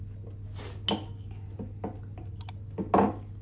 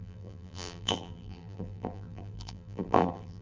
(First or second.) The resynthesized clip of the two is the second